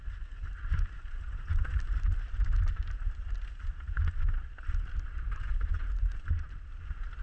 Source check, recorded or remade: recorded